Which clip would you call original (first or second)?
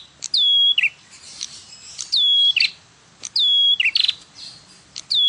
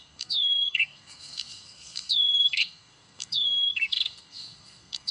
first